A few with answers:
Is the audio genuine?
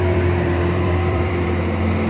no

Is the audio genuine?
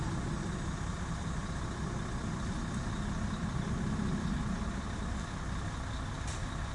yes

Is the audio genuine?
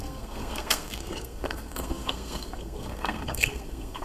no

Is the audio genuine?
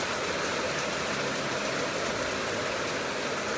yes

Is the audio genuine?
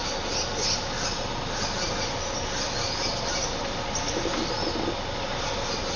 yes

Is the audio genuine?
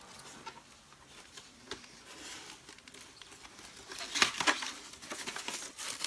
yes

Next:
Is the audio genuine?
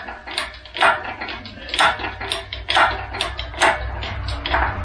yes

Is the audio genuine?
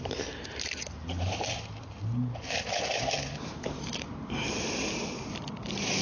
no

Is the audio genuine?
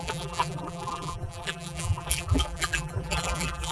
no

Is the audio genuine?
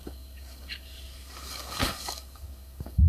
no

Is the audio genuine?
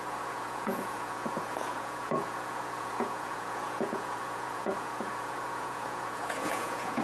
no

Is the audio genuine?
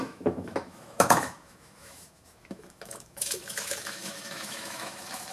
no